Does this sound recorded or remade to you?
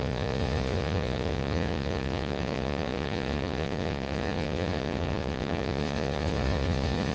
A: remade